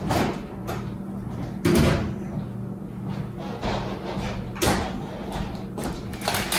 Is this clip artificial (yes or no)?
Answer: no